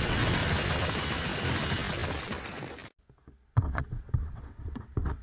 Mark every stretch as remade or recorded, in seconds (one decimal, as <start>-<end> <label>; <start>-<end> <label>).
0.0-0.4 remade; 0.4-3.5 recorded; 3.5-5.2 remade